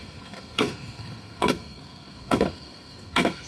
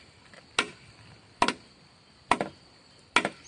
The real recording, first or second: second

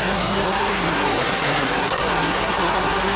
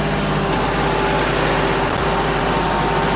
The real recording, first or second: second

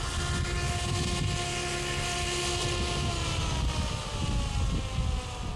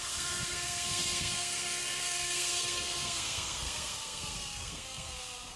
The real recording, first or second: first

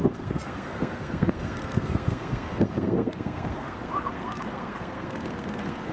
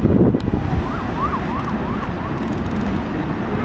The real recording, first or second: second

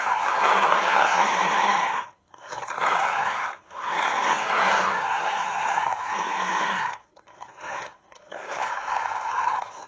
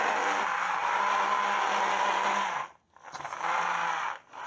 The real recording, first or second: second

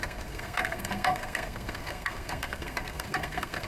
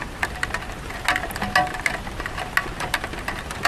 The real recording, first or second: second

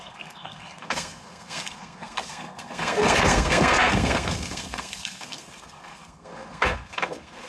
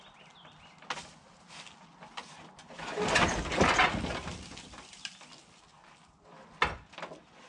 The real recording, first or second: second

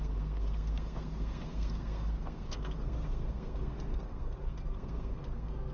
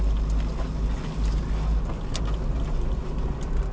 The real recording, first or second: second